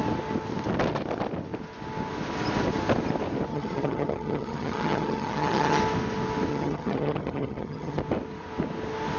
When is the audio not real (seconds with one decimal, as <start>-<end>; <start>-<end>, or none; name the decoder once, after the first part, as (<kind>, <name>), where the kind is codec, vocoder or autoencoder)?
3.5-5.8 (vocoder, HiFi-GAN); 6.5-8.0